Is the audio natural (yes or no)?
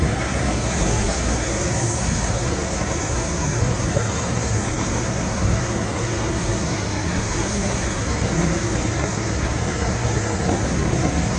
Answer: no